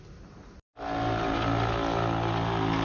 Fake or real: real